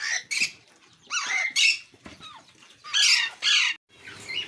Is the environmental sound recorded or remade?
recorded